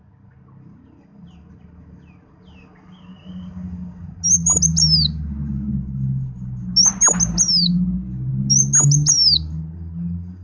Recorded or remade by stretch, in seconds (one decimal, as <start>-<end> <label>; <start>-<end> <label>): 0.0-10.4 recorded